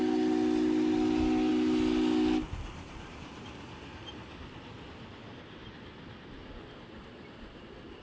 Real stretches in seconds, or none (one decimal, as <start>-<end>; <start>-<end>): 0.0-8.0